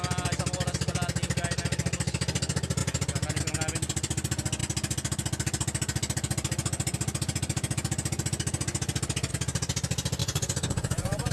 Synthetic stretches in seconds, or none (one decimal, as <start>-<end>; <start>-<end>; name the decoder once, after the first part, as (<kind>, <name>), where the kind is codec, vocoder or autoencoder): 10.2-11.3 (vocoder, Vocos)

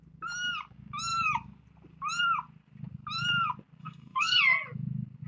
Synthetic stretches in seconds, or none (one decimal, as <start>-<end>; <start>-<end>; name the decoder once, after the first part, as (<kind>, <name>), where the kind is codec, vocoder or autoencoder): 3.8-4.4 (codec, SNAC)

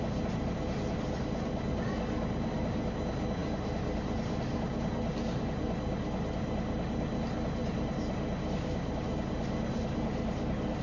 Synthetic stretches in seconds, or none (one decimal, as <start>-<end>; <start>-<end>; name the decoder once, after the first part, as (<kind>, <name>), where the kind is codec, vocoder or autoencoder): none

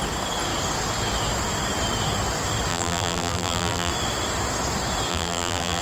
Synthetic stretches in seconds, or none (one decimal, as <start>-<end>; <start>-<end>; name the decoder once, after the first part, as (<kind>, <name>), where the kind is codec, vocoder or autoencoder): 2.7-3.9 (vocoder, BigVGAN v2); 5.1-5.8

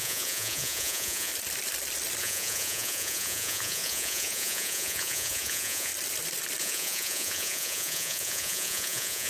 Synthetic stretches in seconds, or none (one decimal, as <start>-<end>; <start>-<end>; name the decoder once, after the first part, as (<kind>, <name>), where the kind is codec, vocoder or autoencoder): 0.0-1.3 (vocoder, Vocos); 2.2-5.9; 6.6-9.3